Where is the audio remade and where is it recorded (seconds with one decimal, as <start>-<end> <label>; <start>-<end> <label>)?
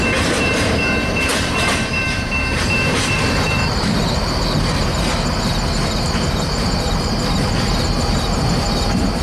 0.0-9.2 remade